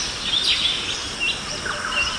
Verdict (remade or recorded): recorded